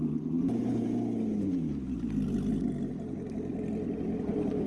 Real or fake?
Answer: real